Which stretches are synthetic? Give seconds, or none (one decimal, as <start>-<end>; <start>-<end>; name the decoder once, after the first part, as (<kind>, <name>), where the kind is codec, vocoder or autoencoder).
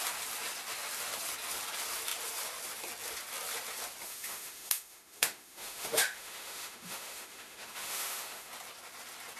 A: 4.0-8.5 (autoencoder, DAC-VAE)